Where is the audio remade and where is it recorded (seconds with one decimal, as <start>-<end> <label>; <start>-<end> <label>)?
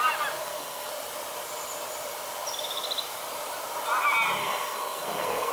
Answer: 0.0-0.4 recorded; 0.4-0.9 remade; 0.9-4.4 recorded; 4.4-5.5 remade